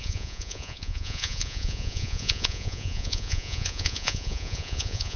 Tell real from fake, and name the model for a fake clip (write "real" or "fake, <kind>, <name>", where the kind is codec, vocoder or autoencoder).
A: fake, vocoder, Vocos